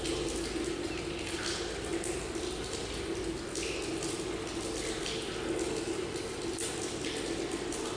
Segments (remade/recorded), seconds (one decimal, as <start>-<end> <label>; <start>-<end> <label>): 0.0-8.0 recorded